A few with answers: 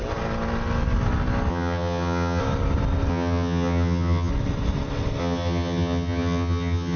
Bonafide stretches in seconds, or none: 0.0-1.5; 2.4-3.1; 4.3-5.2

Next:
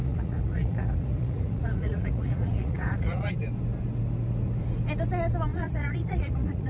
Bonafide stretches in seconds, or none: 3.3-5.5

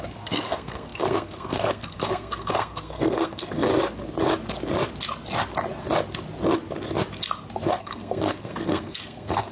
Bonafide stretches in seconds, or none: 3.7-7.8

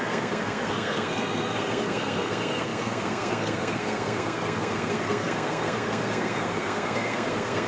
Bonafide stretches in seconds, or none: none